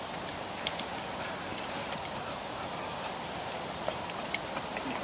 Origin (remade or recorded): remade